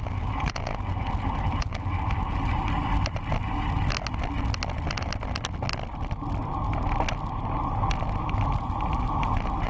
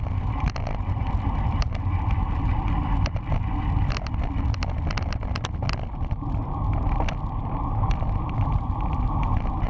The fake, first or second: second